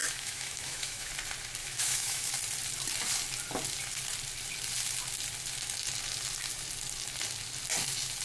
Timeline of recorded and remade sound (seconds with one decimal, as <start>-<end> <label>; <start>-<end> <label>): 0.0-1.1 remade; 1.1-1.6 recorded; 1.6-2.3 remade; 2.3-8.2 recorded